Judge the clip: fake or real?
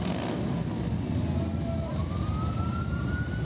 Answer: real